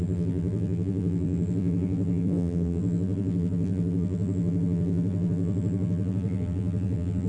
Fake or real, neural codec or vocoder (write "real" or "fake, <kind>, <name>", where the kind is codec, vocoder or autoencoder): fake, vocoder, BigVGAN v2